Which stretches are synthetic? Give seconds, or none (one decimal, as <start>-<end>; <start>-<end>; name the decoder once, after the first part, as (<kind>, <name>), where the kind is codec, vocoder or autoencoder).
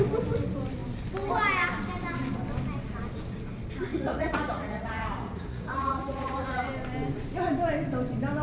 3.9-6.7 (vocoder, Vocos)